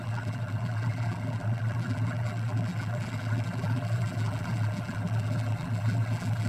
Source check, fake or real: fake